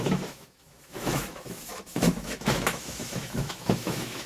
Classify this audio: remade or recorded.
remade